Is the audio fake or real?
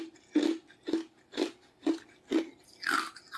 real